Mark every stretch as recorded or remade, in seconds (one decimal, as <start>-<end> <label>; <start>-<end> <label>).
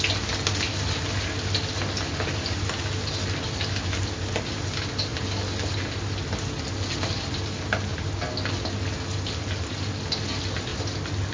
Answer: 0.0-11.3 recorded